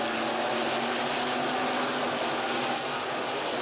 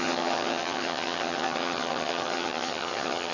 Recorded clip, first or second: first